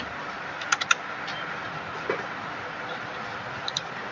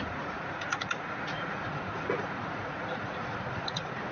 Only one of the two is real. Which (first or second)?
first